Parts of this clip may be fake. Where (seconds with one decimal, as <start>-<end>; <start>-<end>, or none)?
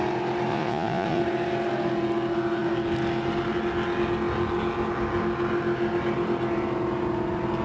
0.5-1.2